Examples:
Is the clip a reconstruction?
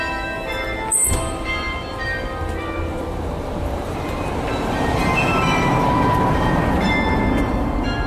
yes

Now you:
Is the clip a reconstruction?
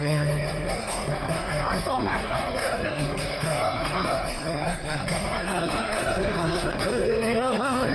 yes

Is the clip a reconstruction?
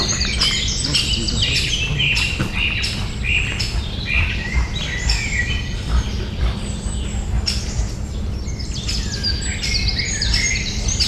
yes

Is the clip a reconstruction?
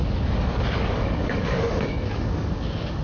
yes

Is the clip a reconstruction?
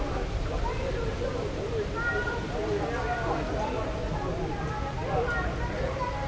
no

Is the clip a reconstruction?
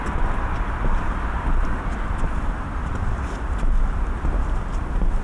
yes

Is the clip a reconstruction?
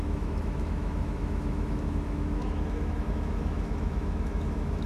yes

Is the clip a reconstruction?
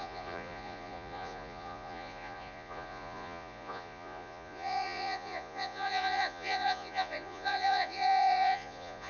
yes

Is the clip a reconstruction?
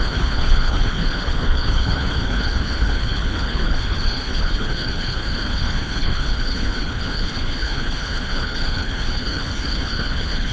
yes